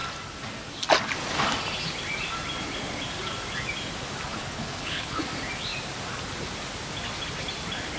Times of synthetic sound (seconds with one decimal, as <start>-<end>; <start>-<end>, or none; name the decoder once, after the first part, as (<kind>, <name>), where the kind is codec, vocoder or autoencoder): 4.3-5.2 (codec, HILCodec)